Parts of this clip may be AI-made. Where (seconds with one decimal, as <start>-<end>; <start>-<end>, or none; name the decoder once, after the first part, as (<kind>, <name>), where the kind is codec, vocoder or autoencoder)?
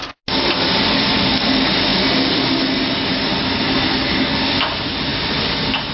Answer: none